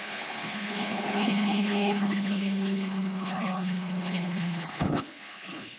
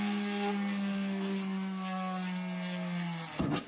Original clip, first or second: second